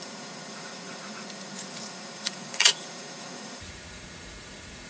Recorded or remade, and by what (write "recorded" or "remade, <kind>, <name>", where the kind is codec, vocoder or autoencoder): remade, vocoder, Vocos